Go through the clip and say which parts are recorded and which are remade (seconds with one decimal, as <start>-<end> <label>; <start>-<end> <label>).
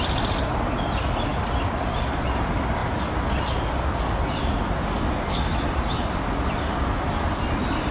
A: 0.0-7.9 recorded